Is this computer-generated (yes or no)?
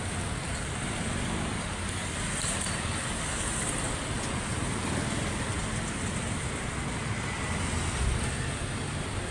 no